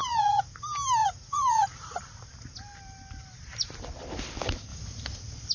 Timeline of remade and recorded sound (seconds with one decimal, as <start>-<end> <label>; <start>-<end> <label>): 0.0-0.5 remade; 0.5-1.0 recorded; 1.0-2.0 remade; 2.0-5.5 recorded